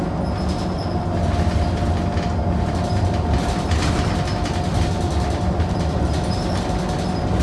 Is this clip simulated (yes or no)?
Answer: no